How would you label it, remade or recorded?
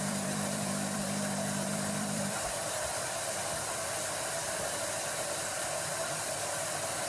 remade